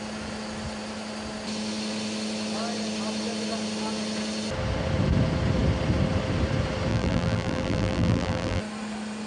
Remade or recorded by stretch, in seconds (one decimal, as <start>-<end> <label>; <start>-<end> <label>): 0.0-6.9 recorded; 6.9-8.6 remade; 8.6-9.3 recorded